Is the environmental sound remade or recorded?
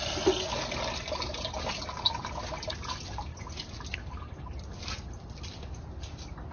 recorded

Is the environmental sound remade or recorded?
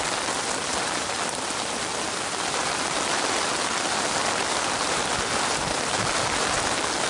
recorded